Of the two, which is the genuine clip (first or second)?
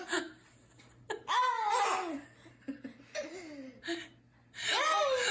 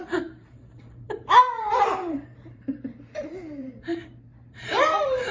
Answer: first